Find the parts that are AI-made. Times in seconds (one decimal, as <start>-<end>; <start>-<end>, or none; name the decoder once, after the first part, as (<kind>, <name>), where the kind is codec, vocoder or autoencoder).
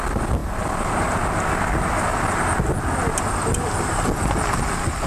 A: none